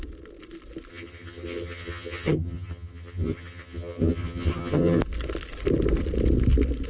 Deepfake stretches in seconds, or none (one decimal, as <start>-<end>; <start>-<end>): 0.9-5.0